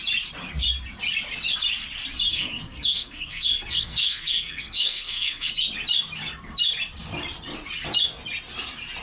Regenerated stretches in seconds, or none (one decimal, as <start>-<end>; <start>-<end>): 2.3-5.5

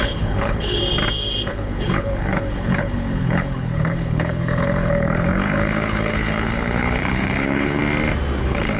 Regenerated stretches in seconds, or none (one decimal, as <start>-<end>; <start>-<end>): 0.0-0.8; 1.5-7.8; 8.4-8.8

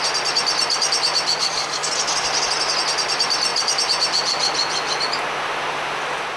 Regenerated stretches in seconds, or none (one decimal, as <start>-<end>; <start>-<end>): 1.4-1.9

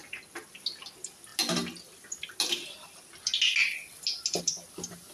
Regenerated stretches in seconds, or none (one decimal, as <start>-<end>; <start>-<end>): none

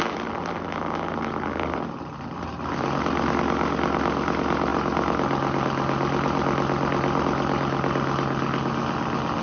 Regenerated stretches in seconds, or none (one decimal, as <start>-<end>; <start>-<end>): none

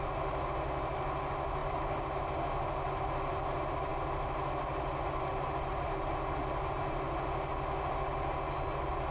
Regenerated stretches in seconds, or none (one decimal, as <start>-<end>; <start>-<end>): none

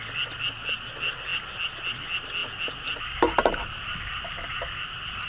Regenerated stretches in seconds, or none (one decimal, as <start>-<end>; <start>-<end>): none

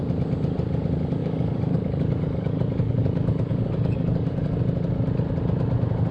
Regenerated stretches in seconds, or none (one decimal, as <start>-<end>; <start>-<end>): 1.2-4.6